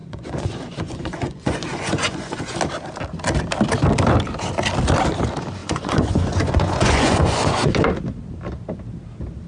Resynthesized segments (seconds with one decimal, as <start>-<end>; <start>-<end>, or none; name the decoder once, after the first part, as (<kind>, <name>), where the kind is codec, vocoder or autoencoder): 0.0-2.6 (vocoder, Vocos); 5.6-7.7